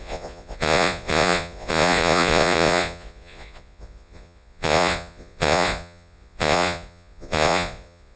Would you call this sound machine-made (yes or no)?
yes